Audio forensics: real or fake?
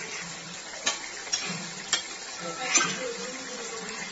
fake